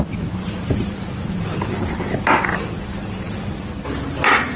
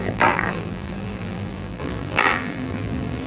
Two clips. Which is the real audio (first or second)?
first